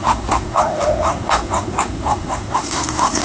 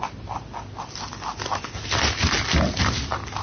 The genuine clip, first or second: second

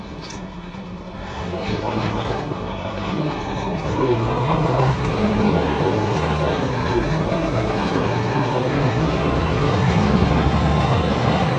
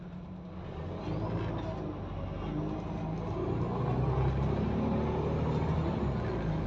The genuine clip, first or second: second